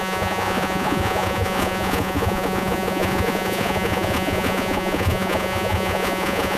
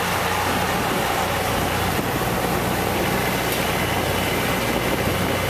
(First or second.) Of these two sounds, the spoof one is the first